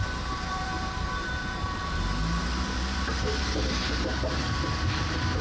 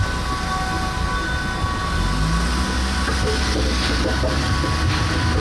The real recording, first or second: second